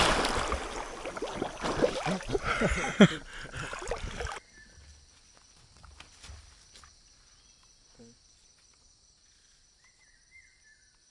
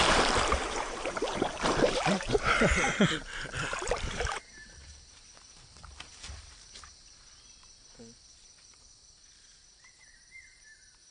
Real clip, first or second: first